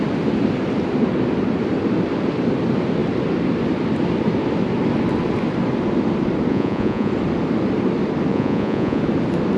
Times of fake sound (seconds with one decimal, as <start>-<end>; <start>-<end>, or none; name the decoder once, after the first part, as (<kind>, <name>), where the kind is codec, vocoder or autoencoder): 6.5-7.1 (vocoder, Vocos); 8.3-9.0